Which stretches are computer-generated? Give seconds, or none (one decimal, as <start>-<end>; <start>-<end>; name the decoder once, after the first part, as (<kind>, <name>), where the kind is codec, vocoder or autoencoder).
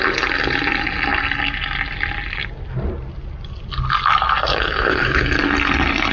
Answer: 4.5-5.3 (codec, HILCodec)